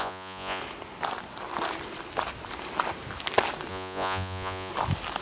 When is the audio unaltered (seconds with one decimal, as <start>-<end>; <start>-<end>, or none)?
0.6-3.7; 4.7-5.2